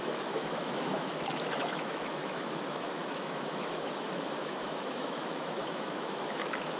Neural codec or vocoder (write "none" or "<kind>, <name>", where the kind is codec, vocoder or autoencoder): autoencoder, DAC-VAE